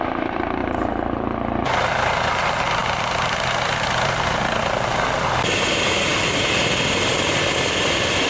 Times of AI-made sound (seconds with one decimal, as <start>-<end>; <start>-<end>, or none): 0.0-0.6; 1.7-8.3